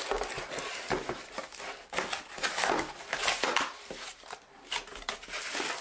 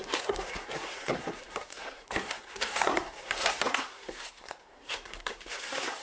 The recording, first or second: first